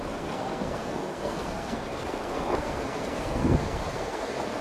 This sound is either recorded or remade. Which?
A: remade